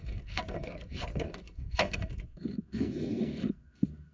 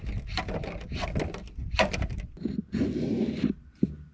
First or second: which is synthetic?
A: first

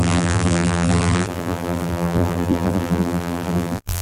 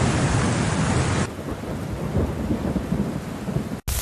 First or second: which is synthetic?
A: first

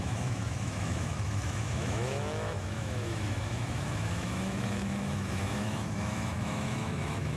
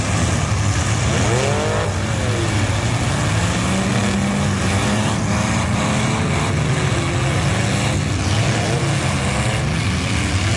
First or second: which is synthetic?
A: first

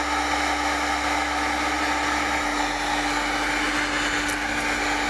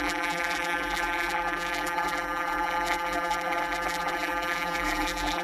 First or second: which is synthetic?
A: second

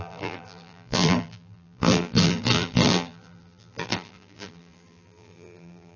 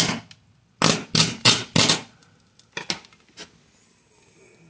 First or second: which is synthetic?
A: first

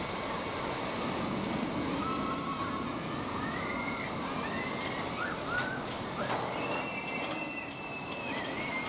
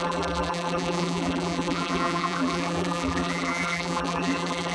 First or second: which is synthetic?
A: second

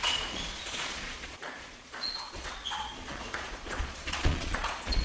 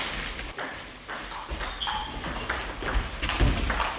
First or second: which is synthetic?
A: first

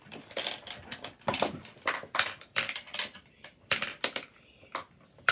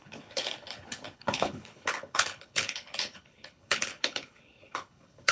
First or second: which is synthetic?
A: second